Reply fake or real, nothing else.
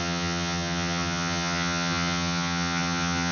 fake